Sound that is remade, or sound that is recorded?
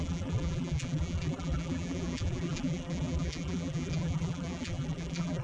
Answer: remade